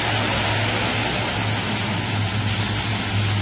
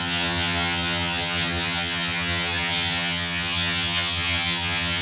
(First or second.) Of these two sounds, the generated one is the second